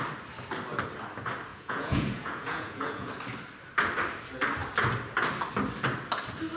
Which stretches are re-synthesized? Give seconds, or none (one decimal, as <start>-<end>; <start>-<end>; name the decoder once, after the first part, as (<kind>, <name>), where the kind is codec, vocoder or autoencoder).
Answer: 1.5-3.1 (vocoder, Vocos)